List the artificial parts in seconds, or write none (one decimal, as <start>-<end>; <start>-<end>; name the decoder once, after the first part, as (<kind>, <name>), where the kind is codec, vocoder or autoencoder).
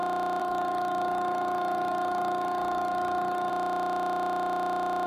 0.4-3.5 (codec, DAC)